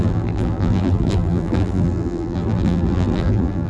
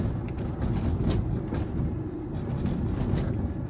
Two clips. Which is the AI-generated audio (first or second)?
first